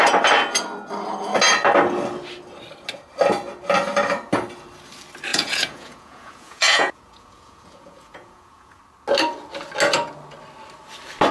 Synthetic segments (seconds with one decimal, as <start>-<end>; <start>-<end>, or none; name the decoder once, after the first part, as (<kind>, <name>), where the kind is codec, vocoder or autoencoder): 5.3-8.8 (vocoder, Vocos)